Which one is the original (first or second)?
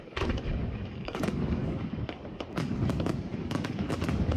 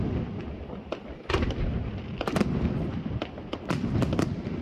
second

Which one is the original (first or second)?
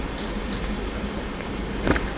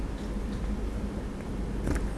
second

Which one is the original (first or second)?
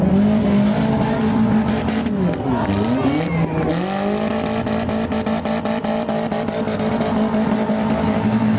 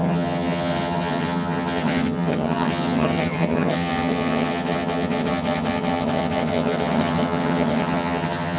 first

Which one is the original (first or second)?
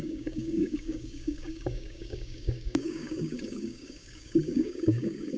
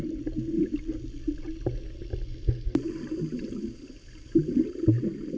second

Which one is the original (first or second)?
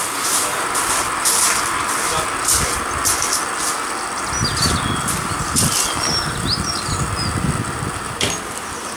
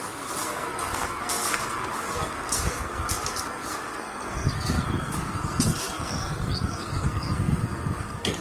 first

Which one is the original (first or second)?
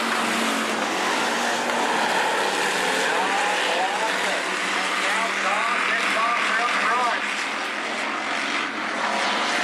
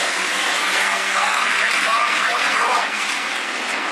first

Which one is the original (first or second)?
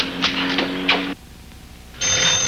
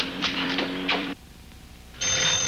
first